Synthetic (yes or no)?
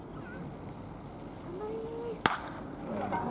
no